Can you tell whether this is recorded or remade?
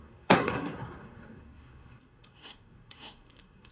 remade